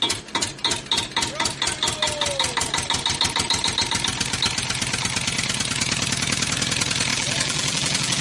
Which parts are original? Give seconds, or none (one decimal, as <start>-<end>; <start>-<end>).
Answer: 0.0-7.1